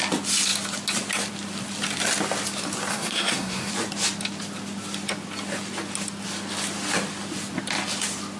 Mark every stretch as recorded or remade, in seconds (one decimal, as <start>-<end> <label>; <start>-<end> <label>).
0.0-2.9 recorded; 2.9-3.7 remade; 3.7-8.4 recorded